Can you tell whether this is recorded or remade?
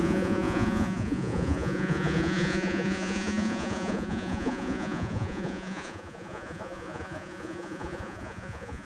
remade